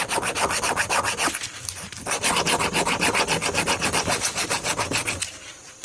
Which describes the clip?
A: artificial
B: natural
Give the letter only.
B